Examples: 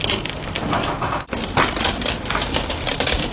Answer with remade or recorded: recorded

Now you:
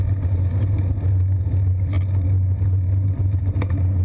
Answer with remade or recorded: recorded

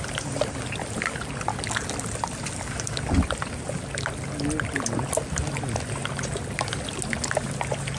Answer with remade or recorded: recorded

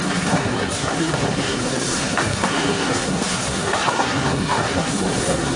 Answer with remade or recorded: remade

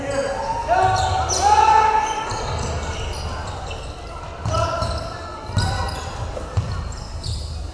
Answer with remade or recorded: recorded